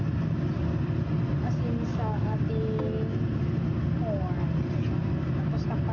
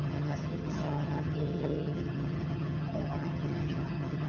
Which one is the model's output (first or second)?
second